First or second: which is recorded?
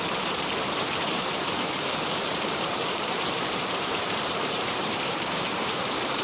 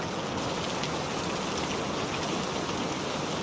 second